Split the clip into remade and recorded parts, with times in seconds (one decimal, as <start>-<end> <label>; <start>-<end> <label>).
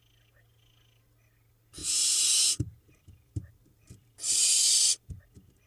0.0-1.8 recorded; 1.8-5.2 remade; 5.2-5.7 recorded